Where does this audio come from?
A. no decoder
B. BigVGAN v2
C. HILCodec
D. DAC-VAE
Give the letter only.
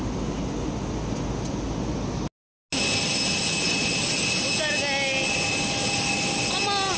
A